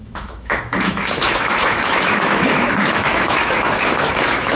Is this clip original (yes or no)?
no